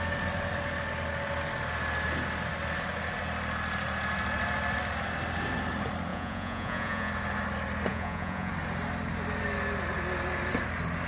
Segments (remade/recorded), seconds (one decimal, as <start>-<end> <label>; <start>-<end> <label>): 0.0-6.1 recorded; 6.1-7.1 remade; 7.1-7.9 recorded; 7.9-8.5 remade; 8.5-11.1 recorded